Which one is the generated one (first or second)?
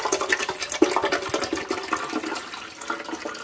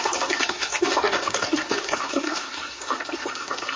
second